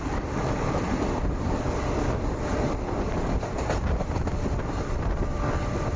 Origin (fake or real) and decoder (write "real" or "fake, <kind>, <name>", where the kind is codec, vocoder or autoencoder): fake, vocoder, BigVGAN v2